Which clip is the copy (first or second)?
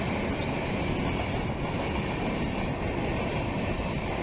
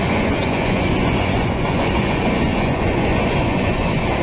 second